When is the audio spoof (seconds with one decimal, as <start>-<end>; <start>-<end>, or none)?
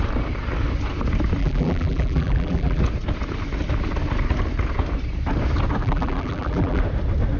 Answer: 1.4-2.8; 5.8-6.8